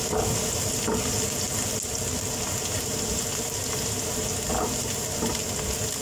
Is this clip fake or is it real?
real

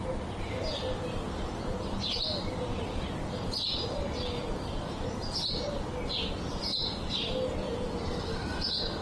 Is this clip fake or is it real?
real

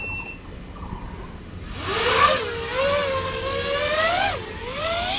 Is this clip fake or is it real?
real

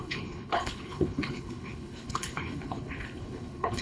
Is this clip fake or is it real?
fake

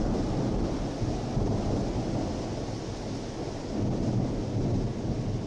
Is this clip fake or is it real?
real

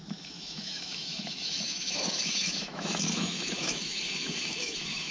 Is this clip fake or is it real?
fake